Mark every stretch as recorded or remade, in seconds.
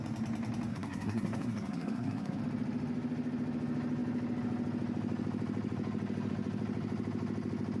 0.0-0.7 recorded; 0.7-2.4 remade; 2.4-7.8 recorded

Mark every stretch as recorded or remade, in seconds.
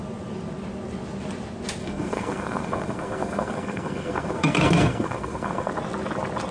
0.0-1.8 recorded; 1.8-5.7 remade; 5.7-6.5 recorded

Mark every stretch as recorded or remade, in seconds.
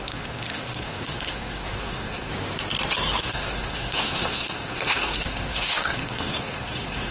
0.0-2.3 remade; 2.3-3.2 recorded; 3.2-7.1 remade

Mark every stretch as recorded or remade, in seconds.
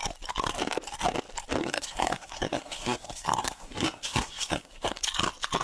0.0-1.6 recorded; 1.6-5.0 remade; 5.0-5.6 recorded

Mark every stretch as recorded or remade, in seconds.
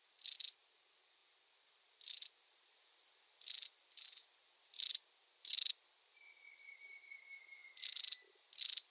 0.0-8.9 recorded